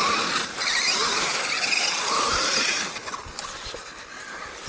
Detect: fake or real real